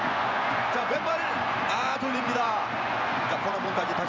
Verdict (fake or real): fake